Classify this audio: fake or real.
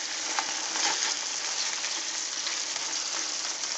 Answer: real